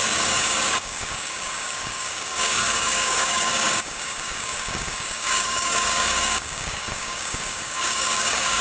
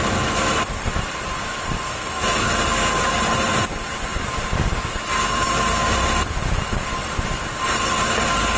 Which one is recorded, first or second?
second